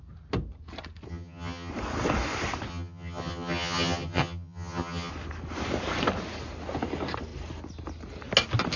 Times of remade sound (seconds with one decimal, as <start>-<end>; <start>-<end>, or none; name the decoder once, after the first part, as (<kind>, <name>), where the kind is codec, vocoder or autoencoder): 1.1-1.7 (vocoder, HiFi-GAN); 2.7-5.1